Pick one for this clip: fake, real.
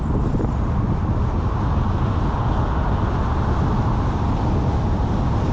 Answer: real